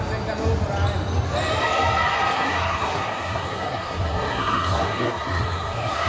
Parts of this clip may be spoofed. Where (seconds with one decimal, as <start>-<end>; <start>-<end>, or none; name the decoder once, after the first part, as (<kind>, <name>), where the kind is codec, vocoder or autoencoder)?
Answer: 2.3-6.1 (codec, SNAC)